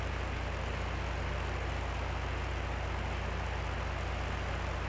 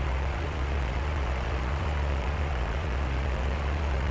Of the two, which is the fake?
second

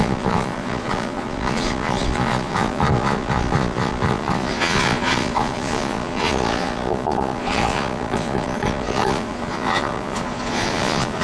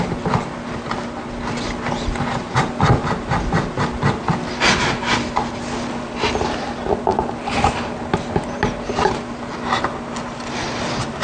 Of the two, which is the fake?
first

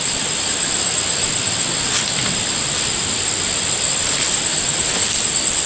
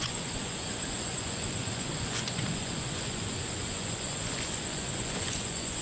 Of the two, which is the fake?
second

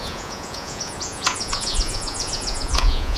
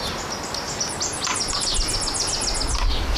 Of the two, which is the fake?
first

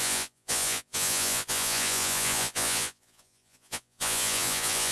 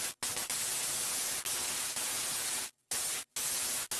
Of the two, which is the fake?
first